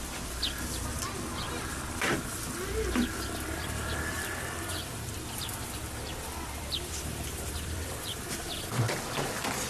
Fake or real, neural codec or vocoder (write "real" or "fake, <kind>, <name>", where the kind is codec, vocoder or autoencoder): fake, vocoder, BigVGAN v2